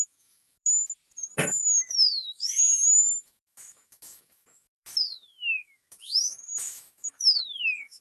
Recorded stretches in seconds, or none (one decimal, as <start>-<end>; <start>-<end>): 0.8-1.6